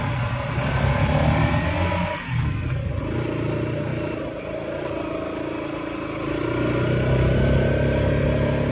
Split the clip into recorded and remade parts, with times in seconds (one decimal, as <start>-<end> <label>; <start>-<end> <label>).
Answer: 0.0-2.1 recorded; 2.1-2.9 remade; 2.9-8.7 recorded